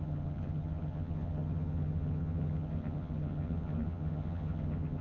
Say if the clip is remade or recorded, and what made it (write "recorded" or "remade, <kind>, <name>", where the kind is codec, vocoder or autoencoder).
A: remade, vocoder, HiFi-GAN